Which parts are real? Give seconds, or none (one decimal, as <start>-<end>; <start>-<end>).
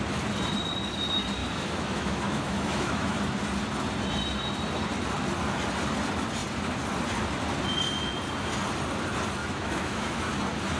0.0-1.4; 3.2-9.4; 10.2-10.8